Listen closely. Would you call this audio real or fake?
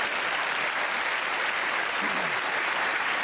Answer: real